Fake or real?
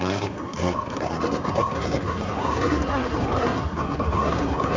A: fake